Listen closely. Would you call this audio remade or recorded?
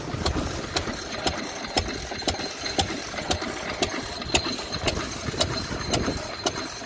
recorded